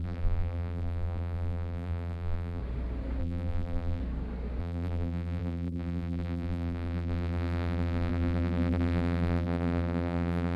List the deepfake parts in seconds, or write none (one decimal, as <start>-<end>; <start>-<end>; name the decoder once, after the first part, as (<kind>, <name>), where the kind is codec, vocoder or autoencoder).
0.0-2.6 (vocoder, BigVGAN v2); 3.2-4.0; 4.6-10.6